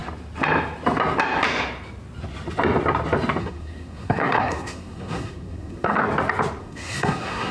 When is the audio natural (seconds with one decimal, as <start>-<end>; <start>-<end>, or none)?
0.0-3.4; 6.0-6.6